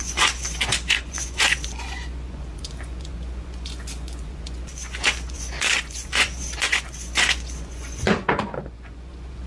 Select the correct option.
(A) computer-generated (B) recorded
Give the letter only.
A